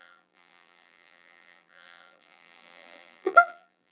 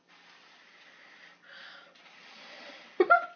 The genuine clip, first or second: second